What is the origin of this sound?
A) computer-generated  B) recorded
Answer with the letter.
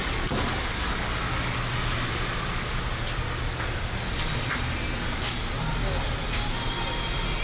B